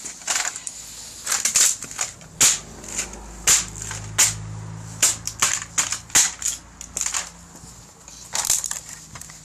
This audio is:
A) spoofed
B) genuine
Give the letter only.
B